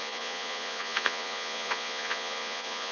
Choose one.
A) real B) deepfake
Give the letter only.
B